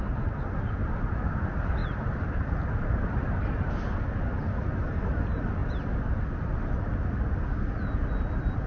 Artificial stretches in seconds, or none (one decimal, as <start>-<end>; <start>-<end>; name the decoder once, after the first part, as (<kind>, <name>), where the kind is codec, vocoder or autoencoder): none